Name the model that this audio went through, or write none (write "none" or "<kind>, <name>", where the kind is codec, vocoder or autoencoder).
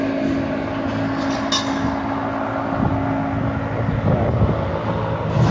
none